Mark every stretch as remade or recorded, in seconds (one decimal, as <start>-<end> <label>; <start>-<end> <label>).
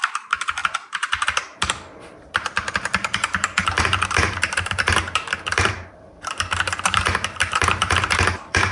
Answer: 0.0-8.7 remade